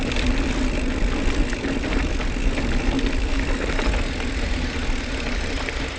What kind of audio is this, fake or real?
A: real